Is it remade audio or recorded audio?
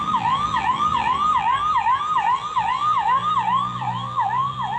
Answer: remade